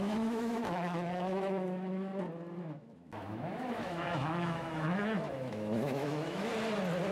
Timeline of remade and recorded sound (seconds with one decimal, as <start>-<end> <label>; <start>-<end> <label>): 0.0-2.1 remade; 2.1-2.6 recorded; 2.6-6.5 remade; 6.5-7.1 recorded